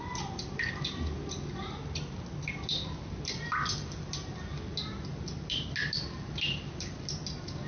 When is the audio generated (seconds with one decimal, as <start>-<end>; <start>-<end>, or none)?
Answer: none